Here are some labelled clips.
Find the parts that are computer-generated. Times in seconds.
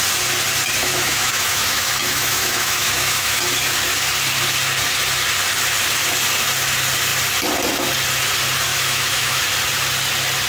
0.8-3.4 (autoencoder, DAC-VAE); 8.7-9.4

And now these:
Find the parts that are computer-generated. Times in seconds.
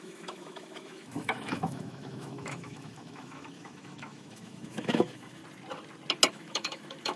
0.0-5.4 (autoencoder, DAC-VAE); 6.3-7.2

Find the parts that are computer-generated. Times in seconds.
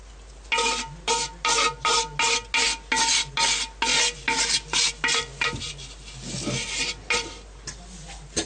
none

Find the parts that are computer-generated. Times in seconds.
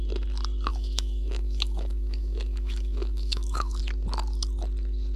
0.7-3.8 (autoencoder, DAC-VAE)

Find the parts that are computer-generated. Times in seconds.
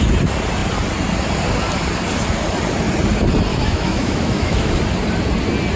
3.5-4.7 (autoencoder, DAC-VAE)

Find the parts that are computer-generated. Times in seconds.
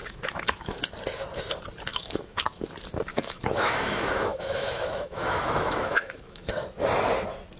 0.0-0.8 (autoencoder, DAC-VAE); 1.9-2.7; 3.1-6.5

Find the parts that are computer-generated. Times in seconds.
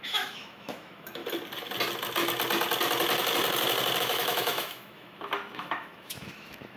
0.0-1.2 (autoencoder, DAC-VAE); 4.0-6.8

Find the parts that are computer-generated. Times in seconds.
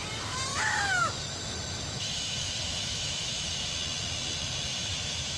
0.5-3.7 (autoencoder, DAC-VAE); 4.7-5.4